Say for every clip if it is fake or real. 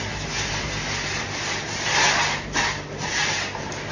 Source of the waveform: real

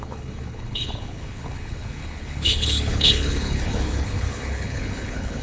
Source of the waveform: fake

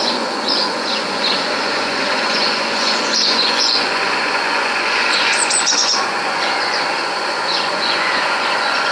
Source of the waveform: fake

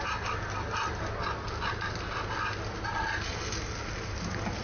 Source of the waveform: real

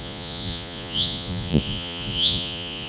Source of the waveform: fake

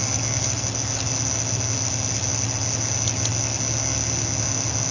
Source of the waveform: real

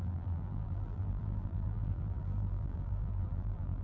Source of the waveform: fake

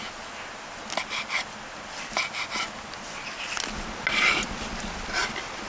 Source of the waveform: real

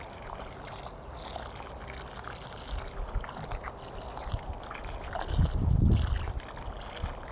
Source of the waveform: real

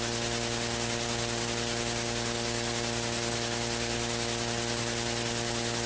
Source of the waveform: real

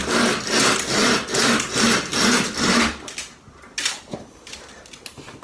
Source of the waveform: real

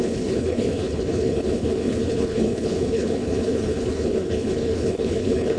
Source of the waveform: fake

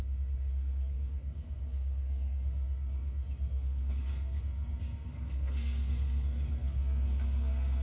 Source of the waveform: fake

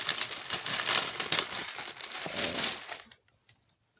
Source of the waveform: real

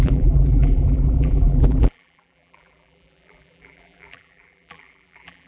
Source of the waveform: fake